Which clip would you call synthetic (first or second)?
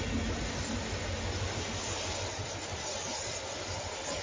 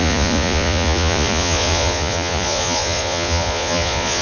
second